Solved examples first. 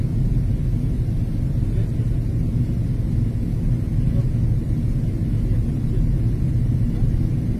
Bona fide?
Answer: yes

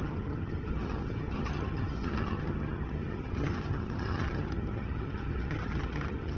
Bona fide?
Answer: no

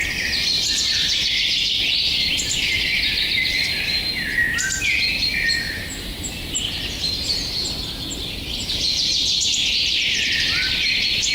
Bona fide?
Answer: yes